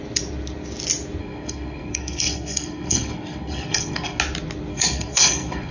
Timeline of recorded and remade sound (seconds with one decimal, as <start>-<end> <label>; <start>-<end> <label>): 0.0-1.2 recorded; 1.2-4.2 remade; 4.2-4.7 recorded; 4.7-5.7 remade